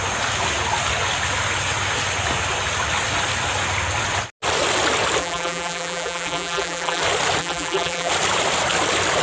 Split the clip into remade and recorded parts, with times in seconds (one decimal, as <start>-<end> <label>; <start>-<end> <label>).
0.0-5.2 recorded; 5.2-7.0 remade; 7.0-7.4 recorded; 7.4-8.1 remade; 8.1-9.2 recorded